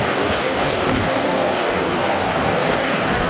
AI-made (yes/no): yes